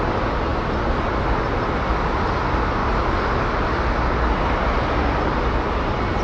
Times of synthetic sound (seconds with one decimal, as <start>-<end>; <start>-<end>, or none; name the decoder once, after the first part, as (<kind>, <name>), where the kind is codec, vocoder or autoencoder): 0.5-1.4 (vocoder, BigVGAN v2); 2.8-3.8